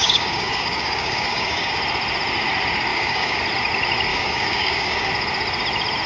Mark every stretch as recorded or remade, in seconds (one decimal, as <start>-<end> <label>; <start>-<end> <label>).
0.0-1.8 remade; 1.8-2.9 recorded; 2.9-3.4 remade; 3.4-4.1 recorded; 4.1-5.1 remade; 5.1-6.1 recorded